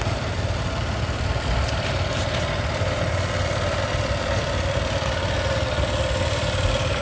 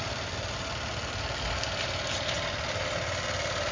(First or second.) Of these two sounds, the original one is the second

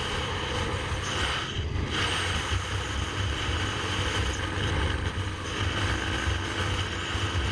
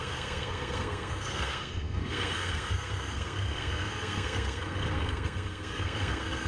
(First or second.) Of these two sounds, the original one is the first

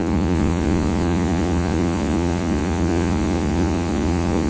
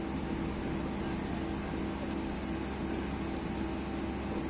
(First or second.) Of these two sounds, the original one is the second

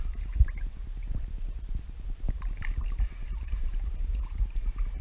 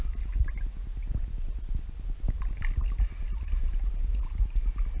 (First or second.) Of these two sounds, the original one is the second